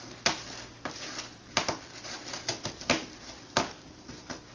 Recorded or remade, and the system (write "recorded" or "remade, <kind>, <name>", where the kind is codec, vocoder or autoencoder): recorded